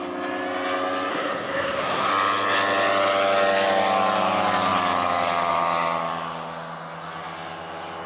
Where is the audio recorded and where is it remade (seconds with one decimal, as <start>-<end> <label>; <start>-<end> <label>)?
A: 0.0-1.1 recorded; 1.1-2.1 remade; 2.1-8.1 recorded